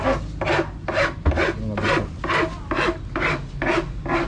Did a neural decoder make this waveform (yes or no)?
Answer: no